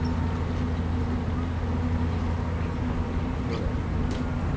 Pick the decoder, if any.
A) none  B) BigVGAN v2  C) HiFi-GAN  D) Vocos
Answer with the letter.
A